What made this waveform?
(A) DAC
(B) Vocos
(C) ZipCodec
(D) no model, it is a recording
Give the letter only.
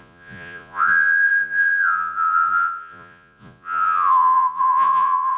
B